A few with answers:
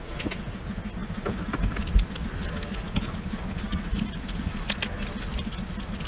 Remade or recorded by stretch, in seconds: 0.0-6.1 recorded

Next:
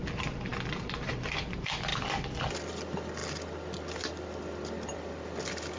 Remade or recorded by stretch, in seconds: 0.0-5.8 recorded